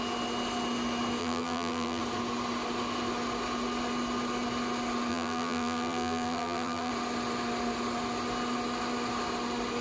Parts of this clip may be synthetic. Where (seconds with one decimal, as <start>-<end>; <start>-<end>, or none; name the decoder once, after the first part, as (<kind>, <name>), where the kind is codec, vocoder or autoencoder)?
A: 1.2-2.0 (vocoder, BigVGAN v2); 5.1-6.9